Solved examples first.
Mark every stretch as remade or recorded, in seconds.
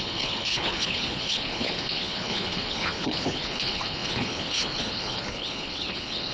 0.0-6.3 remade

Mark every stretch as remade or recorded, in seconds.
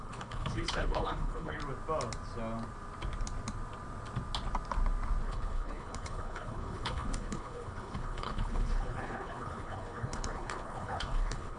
0.0-1.6 remade; 1.6-5.2 recorded; 5.2-11.6 remade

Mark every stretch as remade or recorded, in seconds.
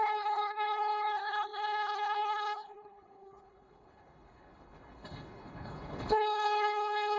0.0-7.2 remade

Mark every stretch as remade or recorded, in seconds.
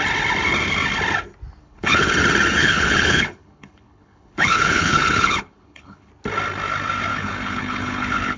0.0-1.6 recorded; 1.6-2.1 remade; 2.1-2.6 recorded; 2.6-6.1 remade; 6.1-7.1 recorded; 7.1-8.4 remade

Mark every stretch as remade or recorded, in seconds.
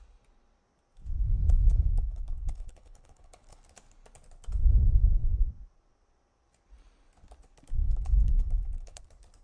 0.0-1.7 recorded; 1.7-3.6 remade; 3.6-7.8 recorded; 7.8-9.0 remade; 9.0-9.4 recorded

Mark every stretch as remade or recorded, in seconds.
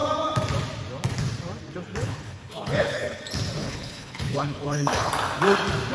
0.0-2.0 recorded; 2.0-3.2 remade; 3.2-3.6 recorded; 3.6-5.1 remade; 5.1-5.9 recorded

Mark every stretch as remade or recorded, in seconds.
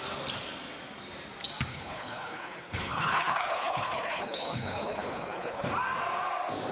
0.0-1.7 recorded; 1.7-5.7 remade; 5.7-6.7 recorded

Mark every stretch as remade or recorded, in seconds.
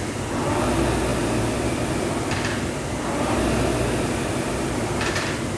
0.0-5.6 recorded